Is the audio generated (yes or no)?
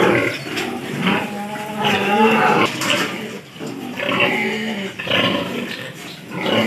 no